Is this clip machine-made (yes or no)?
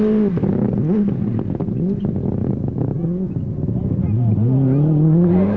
no